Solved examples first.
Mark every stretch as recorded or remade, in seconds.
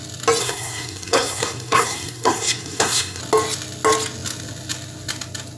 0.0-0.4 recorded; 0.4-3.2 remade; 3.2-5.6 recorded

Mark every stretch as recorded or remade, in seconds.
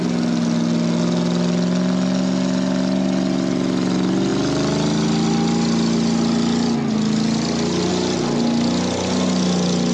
0.0-9.9 recorded